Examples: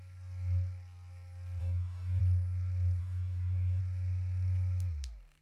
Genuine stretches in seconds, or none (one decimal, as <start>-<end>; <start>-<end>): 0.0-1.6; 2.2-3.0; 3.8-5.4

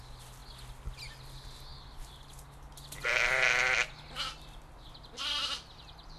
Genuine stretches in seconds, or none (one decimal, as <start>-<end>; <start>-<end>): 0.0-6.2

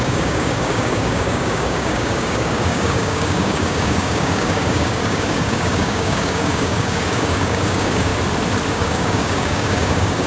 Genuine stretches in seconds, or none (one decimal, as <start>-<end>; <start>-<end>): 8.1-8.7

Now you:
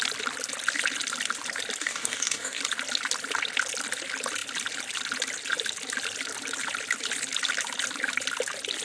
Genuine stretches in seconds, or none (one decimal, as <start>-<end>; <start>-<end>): 0.0-1.8; 2.6-8.8